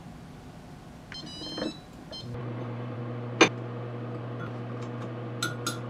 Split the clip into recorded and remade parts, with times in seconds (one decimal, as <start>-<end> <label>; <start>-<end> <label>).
0.0-2.4 recorded; 2.4-3.0 remade; 3.0-5.9 recorded